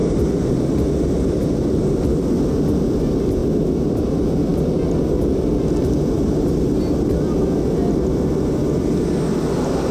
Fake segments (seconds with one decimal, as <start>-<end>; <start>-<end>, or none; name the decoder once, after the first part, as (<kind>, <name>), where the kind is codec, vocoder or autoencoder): none